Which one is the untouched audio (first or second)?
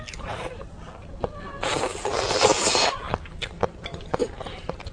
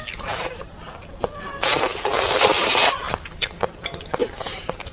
second